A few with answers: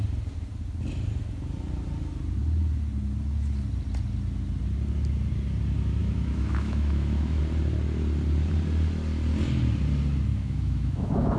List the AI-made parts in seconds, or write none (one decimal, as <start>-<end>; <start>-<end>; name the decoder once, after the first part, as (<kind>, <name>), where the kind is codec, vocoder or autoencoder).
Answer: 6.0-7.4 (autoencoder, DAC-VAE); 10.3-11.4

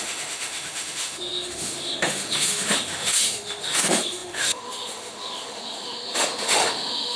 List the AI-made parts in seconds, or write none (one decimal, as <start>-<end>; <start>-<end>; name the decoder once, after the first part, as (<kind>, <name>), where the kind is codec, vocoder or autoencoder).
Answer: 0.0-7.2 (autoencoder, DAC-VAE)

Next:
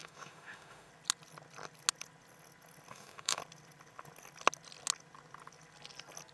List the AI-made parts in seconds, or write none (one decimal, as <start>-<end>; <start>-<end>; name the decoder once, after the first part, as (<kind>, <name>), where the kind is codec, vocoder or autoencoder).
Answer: 0.0-0.9 (autoencoder, DAC-VAE); 2.9-3.4

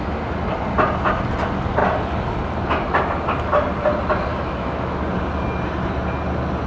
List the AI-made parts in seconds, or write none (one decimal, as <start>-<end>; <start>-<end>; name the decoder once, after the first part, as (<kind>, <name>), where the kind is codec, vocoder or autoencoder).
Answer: 4.3-5.0 (autoencoder, DAC-VAE)

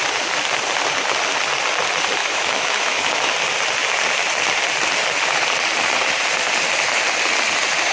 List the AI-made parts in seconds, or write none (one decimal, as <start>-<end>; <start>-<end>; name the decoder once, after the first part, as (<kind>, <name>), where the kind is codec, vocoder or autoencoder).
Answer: 2.2-3.3 (autoencoder, DAC-VAE)